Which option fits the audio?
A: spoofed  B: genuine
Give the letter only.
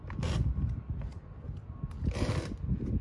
B